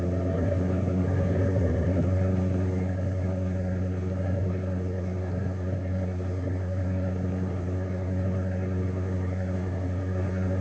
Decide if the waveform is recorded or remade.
remade